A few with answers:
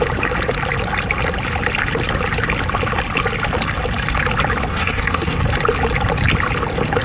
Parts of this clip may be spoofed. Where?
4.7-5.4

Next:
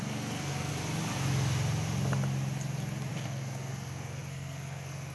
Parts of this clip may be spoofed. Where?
0.0-0.7; 3.1-5.1

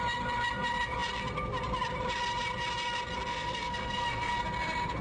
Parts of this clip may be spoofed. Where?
3.3-4.4

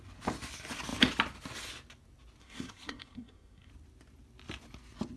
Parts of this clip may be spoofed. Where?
2.4-3.7